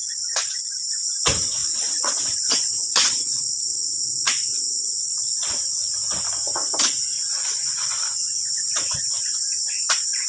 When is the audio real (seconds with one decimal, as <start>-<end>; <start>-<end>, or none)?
0.6-1.6; 4.0-10.3

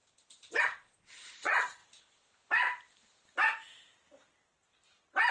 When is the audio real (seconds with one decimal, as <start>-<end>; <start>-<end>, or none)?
0.0-0.6; 1.8-5.3

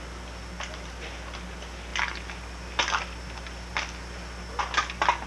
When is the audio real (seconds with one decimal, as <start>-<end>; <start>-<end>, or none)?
0.0-5.3

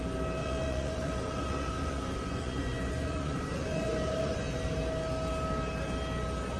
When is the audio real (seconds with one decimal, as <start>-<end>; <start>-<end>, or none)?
0.0-0.4; 4.4-6.6

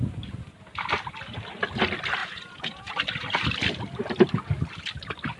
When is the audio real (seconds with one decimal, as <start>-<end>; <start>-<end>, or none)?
0.0-2.2; 2.9-5.4

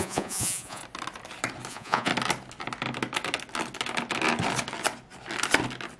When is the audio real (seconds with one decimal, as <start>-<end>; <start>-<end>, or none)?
0.8-1.7; 2.1-6.0